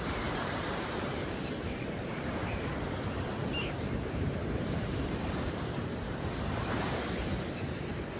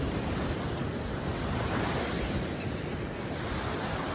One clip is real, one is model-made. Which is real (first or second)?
second